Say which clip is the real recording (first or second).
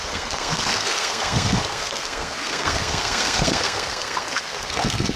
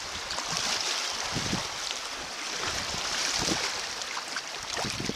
second